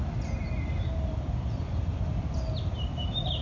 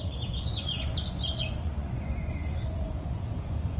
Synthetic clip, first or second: second